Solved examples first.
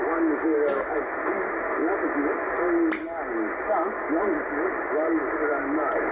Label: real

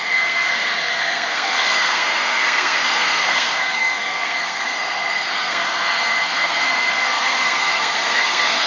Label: fake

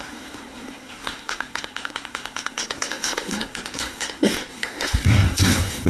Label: fake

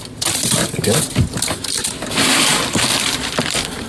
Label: real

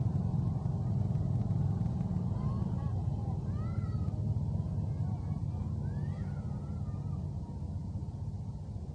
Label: real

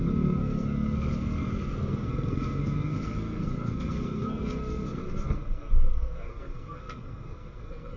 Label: fake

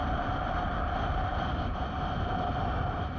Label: real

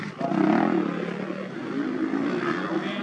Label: real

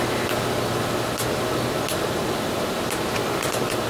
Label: real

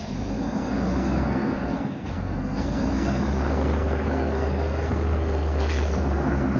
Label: fake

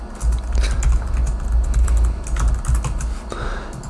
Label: real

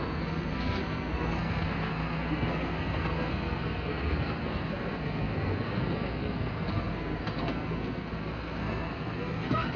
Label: fake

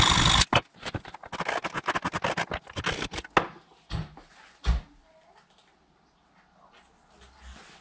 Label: real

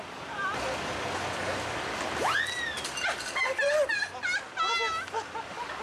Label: real